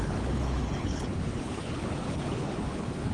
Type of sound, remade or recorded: remade